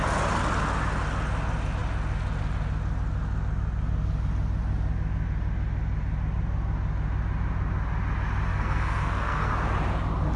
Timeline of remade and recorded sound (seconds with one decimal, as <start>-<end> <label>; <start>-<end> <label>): 0.0-8.5 recorded; 8.5-9.5 remade; 9.5-10.4 recorded